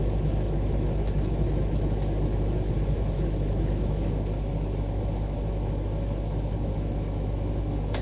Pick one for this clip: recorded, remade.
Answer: remade